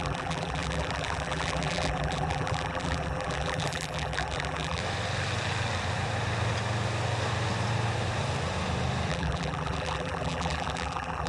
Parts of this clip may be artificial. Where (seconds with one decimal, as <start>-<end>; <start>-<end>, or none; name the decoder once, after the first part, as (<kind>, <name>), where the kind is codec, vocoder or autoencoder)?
0.0-4.8 (vocoder, BigVGAN v2); 9.1-11.3